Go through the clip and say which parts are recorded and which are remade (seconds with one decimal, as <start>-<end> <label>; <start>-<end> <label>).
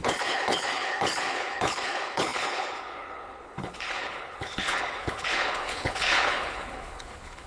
0.0-7.5 remade